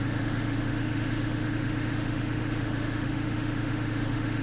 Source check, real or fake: fake